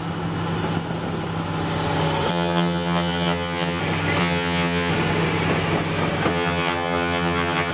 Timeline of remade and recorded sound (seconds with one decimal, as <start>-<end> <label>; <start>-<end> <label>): 0.0-2.3 recorded; 2.3-3.8 remade; 3.8-4.2 recorded; 4.2-4.9 remade; 4.9-6.3 recorded; 6.3-7.7 remade